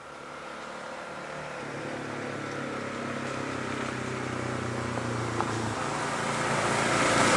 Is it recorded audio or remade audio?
recorded